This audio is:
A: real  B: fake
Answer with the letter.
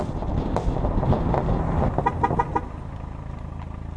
A